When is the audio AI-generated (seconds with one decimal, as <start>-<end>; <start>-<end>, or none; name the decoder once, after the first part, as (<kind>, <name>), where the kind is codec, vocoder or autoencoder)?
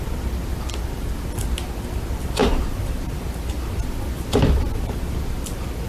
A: 2.4-3.7 (vocoder, BigVGAN v2)